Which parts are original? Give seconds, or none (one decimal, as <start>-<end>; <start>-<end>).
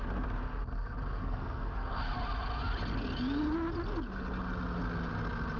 0.0-1.2; 2.0-5.6